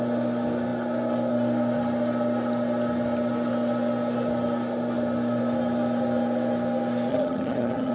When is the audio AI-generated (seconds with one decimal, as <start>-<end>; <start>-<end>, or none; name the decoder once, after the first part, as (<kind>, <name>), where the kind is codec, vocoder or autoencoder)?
7.1-7.9 (vocoder, HiFi-GAN)